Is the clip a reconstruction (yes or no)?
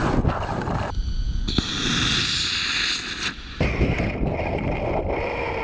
no